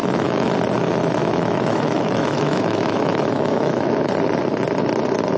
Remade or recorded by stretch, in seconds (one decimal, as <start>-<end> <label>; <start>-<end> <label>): 0.0-0.5 remade; 0.5-1.2 recorded; 1.2-4.1 remade; 4.1-5.4 recorded